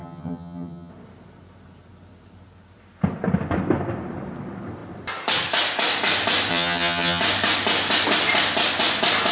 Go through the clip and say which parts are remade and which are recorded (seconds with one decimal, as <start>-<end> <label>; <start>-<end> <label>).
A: 0.0-0.9 remade; 0.9-6.5 recorded; 6.5-7.2 remade; 7.2-9.3 recorded